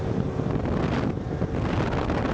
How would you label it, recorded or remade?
recorded